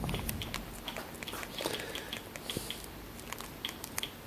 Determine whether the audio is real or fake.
real